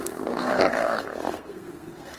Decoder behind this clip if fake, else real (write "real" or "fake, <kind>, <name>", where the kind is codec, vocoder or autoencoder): fake, codec, SNAC